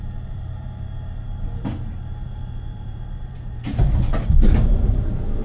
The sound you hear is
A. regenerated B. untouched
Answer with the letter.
A